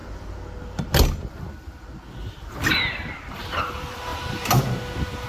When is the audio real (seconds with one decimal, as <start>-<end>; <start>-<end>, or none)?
0.0-3.2